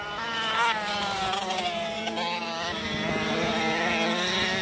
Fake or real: real